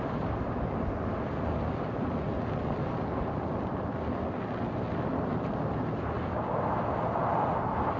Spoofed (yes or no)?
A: no